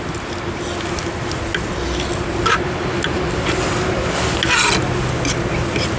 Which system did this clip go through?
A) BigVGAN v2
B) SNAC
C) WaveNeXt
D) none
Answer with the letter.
D